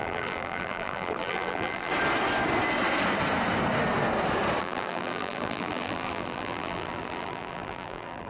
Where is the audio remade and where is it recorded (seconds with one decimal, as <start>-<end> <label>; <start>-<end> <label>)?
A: 0.0-1.9 remade; 1.9-4.6 recorded; 4.6-8.3 remade